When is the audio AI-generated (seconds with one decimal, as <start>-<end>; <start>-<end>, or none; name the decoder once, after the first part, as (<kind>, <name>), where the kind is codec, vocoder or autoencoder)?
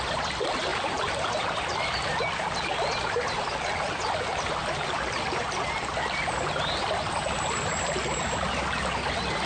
0.7-1.3 (vocoder, BigVGAN v2); 2.7-3.5; 4.6-5.6